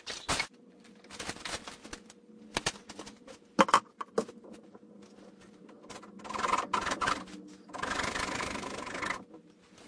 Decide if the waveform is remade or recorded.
recorded